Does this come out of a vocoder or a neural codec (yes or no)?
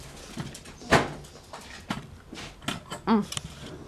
no